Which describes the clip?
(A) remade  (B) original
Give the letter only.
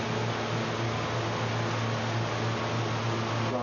B